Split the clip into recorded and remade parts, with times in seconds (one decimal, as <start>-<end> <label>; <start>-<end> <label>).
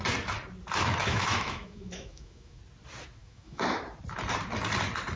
0.0-1.0 recorded; 1.0-2.6 remade; 2.6-3.2 recorded; 3.2-3.8 remade; 3.8-5.2 recorded